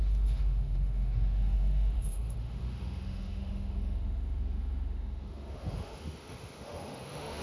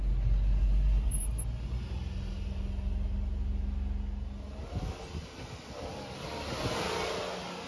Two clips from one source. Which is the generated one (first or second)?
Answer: first